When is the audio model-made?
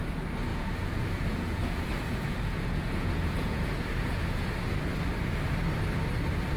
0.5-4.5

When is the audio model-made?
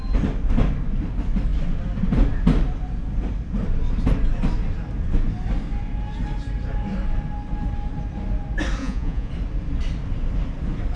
8.8-9.3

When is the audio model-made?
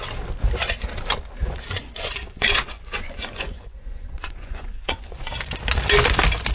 1.4-5.3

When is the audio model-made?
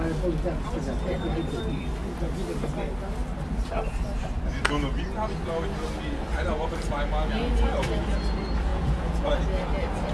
8.7-9.3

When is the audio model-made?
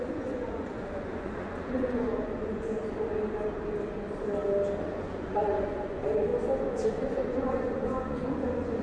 0.0-2.8; 4.8-6.3; 6.9-8.8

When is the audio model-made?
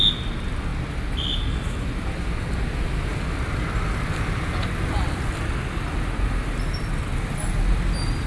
none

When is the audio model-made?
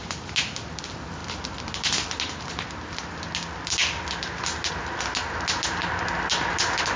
none